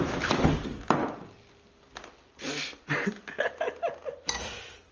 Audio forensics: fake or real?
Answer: real